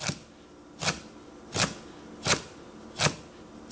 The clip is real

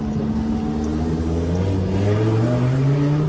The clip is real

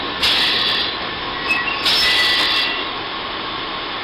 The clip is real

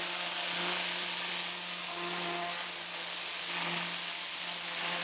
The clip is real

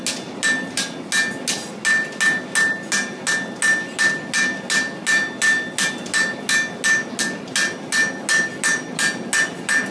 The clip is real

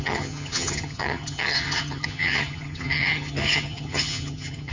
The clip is fake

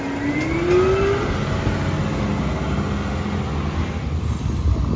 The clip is real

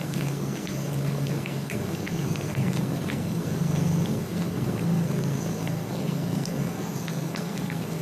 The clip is fake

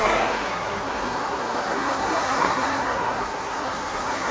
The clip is fake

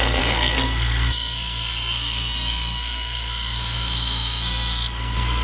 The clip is fake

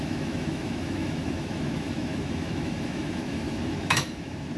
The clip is fake